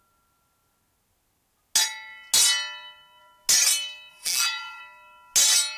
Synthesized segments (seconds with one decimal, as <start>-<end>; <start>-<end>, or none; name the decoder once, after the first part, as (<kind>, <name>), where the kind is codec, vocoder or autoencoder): 4.1-4.8 (vocoder, BigVGAN v2)